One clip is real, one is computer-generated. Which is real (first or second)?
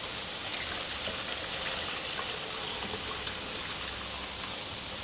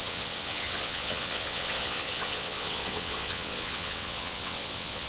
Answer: first